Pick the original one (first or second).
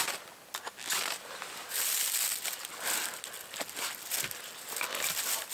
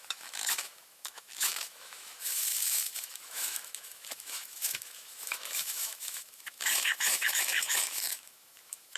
first